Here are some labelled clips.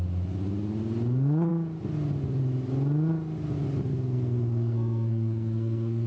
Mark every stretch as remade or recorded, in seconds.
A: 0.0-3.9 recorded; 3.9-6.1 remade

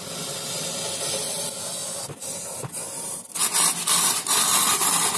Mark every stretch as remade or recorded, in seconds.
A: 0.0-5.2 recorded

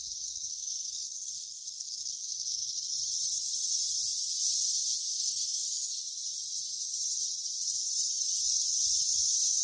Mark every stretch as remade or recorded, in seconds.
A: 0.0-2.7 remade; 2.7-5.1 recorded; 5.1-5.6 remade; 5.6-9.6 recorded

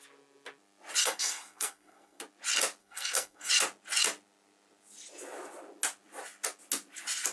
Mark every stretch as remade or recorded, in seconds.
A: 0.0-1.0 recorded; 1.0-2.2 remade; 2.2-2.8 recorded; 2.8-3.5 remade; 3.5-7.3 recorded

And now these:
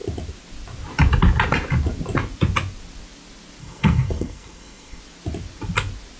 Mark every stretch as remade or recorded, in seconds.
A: 0.0-3.6 recorded; 3.6-5.0 remade; 5.0-6.2 recorded

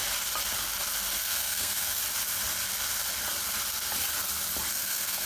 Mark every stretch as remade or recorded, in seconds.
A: 0.0-1.2 recorded; 1.2-2.0 remade; 2.0-4.7 recorded; 4.7-5.3 remade

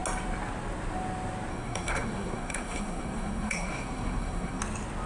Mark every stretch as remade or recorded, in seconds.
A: 0.0-1.5 recorded; 1.5-4.6 remade; 4.6-5.1 recorded